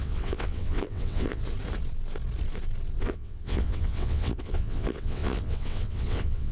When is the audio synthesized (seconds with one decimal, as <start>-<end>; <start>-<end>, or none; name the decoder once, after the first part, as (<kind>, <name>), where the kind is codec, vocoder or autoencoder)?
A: 0.0-1.4 (vocoder, WaveNeXt); 3.0-6.5